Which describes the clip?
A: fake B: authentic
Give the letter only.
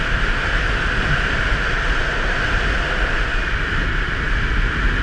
B